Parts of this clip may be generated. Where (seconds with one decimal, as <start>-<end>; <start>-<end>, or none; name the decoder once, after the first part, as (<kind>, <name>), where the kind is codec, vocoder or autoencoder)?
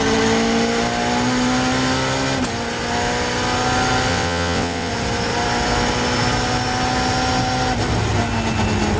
4.1-4.9 (vocoder, WaveNeXt)